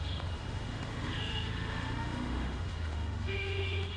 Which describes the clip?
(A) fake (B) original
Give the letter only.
A